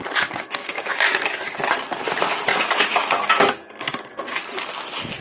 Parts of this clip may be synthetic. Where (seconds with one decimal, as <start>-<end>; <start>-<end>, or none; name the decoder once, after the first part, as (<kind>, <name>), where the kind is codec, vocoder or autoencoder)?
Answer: 0.6-1.2 (codec, DAC); 2.5-3.3